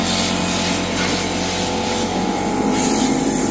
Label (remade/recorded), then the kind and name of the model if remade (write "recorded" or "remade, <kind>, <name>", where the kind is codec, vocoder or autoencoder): recorded